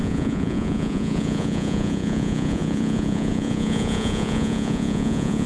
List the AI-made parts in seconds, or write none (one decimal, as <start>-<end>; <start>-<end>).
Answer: 0.0-5.5